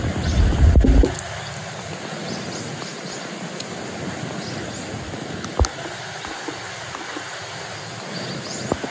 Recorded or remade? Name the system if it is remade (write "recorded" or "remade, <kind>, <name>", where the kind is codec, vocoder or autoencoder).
recorded